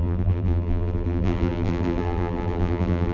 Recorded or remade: remade